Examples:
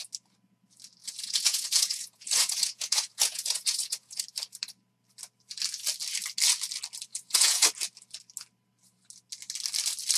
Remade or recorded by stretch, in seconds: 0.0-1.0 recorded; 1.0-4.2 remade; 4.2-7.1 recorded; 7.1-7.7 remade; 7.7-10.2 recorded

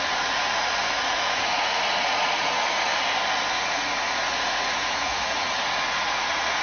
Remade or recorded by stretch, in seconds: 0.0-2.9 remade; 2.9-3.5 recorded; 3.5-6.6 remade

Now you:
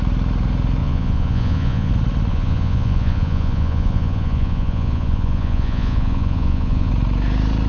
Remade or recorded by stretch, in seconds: 0.0-0.8 recorded; 0.8-1.9 remade; 1.9-2.3 recorded; 2.3-6.9 remade; 6.9-7.7 recorded